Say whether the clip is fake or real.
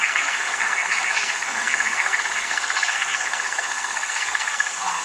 fake